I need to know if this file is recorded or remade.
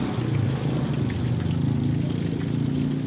recorded